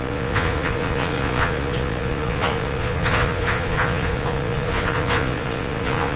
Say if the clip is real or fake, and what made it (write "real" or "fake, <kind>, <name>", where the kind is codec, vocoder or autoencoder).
fake, vocoder, Vocos